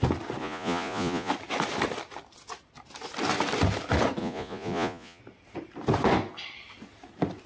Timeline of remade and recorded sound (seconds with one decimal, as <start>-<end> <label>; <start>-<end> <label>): 0.0-0.4 recorded; 0.4-1.3 remade; 1.3-4.2 recorded; 4.2-5.2 remade; 5.2-7.5 recorded